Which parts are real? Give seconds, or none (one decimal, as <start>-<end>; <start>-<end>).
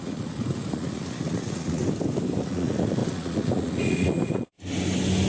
1.8-2.4; 4.5-5.3